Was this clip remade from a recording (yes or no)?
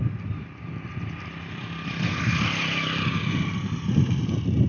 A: no